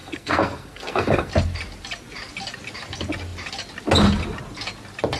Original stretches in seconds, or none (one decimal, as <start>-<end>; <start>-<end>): 1.3-5.2